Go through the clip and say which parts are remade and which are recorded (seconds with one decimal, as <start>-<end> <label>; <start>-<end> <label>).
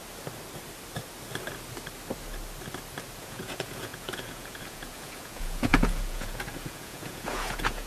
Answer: 0.0-3.2 recorded; 3.2-7.9 remade